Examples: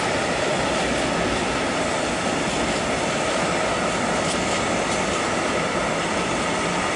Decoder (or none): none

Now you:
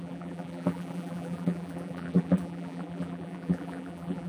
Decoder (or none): vocoder, BigVGAN v2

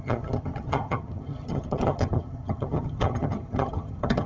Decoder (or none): vocoder, HiFi-GAN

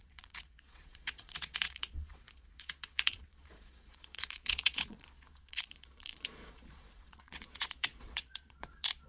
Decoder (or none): vocoder, Vocos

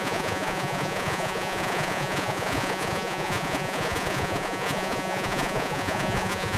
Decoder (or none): vocoder, Vocos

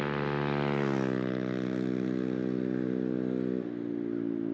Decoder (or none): none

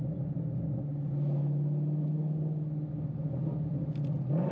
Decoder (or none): none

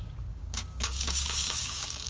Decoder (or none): codec, DAC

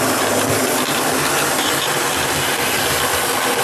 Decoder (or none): none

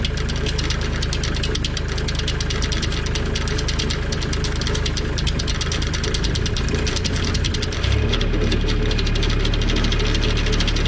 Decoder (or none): none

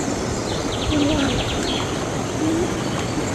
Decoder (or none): none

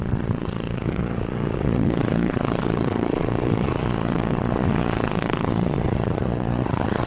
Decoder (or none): vocoder, Vocos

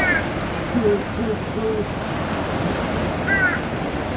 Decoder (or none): none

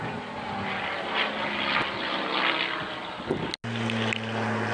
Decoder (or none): none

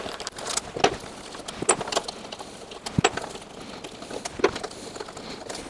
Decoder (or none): none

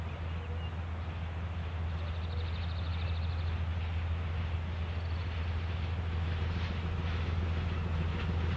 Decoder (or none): none